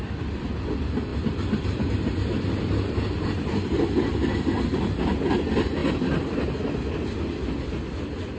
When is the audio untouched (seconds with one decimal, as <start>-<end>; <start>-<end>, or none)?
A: 0.0-8.4